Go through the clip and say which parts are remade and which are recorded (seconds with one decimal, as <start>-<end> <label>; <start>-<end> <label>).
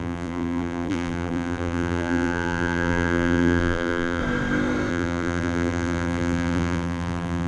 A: 0.0-4.2 remade; 4.2-4.9 recorded; 4.9-7.5 remade